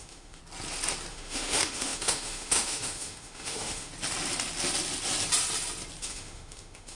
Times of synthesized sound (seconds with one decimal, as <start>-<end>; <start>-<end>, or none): 0.0-0.4; 1.1-3.9; 6.0-6.9